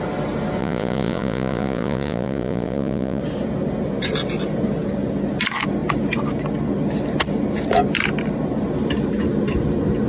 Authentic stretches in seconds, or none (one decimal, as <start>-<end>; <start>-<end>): 0.0-0.6; 3.2-10.1